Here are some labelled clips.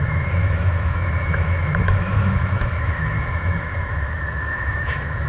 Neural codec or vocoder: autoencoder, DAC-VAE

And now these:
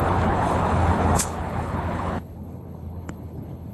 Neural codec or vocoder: codec, HILCodec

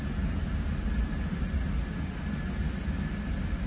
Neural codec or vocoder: none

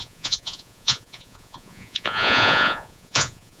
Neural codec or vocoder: vocoder, Vocos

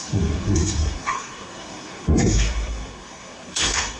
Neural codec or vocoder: codec, SNAC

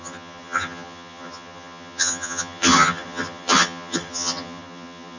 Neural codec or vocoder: vocoder, HiFi-GAN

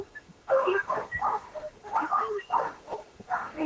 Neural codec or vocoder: autoencoder, DAC-VAE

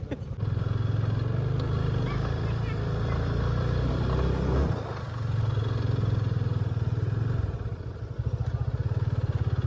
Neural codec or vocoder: none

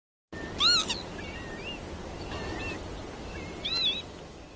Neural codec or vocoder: none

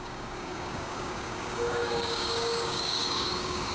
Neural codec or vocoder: codec, DAC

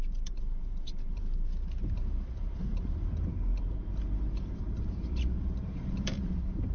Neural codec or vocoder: vocoder, BigVGAN v2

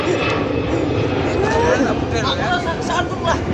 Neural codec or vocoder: vocoder, BigVGAN v2